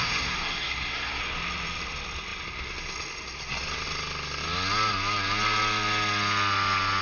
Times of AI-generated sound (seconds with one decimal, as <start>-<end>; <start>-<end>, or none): 0.0-1.2